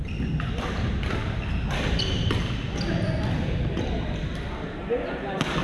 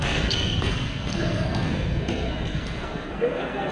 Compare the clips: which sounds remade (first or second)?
second